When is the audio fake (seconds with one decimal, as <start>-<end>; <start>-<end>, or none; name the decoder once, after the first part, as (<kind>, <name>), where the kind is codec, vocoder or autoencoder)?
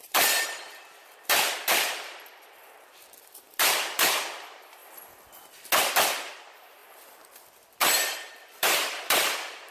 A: 0.0-4.8 (vocoder, BigVGAN v2); 6.3-9.7